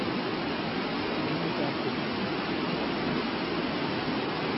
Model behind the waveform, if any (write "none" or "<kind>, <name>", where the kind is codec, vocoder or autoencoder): vocoder, BigVGAN v2